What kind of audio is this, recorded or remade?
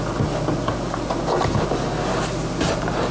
recorded